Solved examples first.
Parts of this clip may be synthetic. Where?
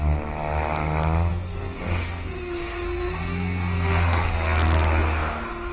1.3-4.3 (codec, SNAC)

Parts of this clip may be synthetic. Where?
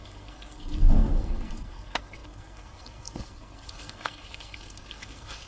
0.0-5.5 (codec, SNAC)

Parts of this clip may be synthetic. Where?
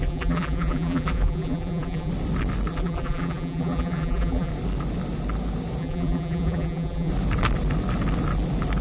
0.0-2.1 (vocoder, BigVGAN v2); 2.7-4.5; 5.8-7.1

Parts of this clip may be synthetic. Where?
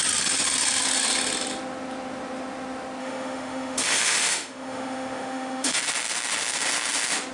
3.0-5.8 (autoencoder, DAC-VAE)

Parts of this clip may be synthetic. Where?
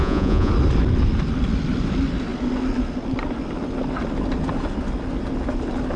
0.0-0.5 (vocoder, Vocos)